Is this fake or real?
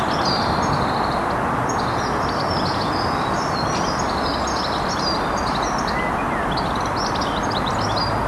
real